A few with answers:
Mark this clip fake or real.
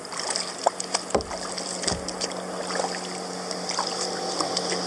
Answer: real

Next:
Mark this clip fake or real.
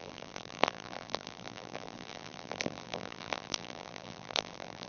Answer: fake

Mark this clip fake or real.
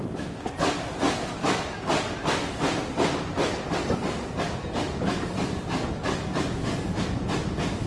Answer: real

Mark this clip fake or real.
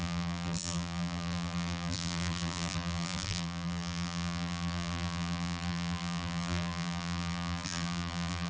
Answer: fake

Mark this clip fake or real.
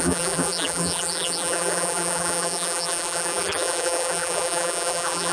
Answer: fake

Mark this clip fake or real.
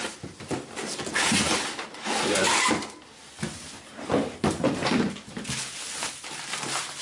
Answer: fake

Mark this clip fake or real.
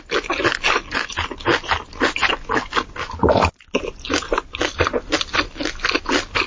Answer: real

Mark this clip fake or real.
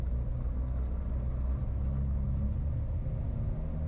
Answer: real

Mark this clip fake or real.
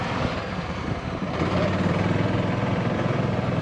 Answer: fake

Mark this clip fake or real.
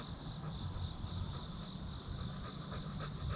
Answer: real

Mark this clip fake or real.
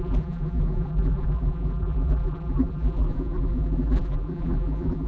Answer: fake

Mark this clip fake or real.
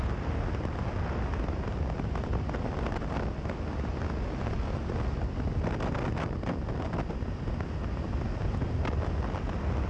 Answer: real